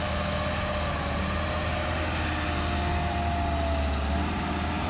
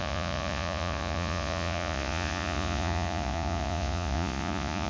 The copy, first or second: second